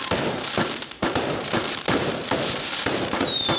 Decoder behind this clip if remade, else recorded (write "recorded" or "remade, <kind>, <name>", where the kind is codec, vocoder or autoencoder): remade, vocoder, BigVGAN v2